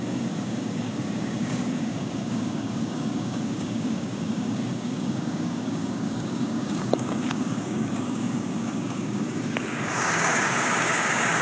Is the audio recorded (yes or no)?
no